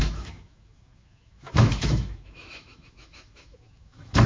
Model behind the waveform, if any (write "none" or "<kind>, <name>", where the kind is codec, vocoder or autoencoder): autoencoder, DAC-VAE